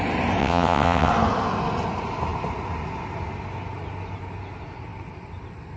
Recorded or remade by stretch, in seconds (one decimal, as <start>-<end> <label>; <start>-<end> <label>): 0.0-0.4 recorded; 0.4-1.1 remade; 1.1-5.8 recorded

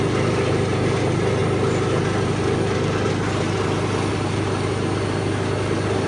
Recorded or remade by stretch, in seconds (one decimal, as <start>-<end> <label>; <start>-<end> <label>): 0.0-6.1 recorded

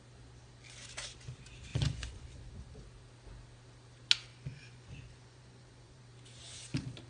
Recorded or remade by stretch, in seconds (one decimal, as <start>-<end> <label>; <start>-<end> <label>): 0.0-1.7 recorded; 1.7-2.5 remade; 2.5-4.3 recorded; 4.3-6.0 remade; 6.0-7.1 recorded